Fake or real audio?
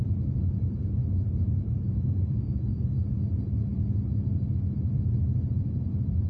fake